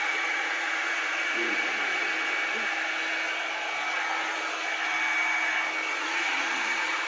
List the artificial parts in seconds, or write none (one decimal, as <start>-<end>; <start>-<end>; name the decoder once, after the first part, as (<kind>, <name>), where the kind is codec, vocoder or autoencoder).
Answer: 0.0-2.1 (vocoder, Vocos); 5.9-7.1